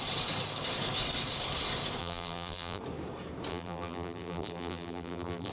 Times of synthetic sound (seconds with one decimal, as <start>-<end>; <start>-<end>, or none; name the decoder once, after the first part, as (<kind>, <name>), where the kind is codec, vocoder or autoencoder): 2.0-2.8 (vocoder, BigVGAN v2); 3.5-5.5